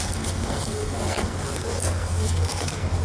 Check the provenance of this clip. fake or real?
fake